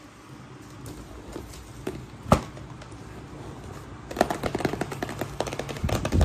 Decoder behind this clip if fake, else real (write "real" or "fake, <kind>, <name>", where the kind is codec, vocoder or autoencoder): real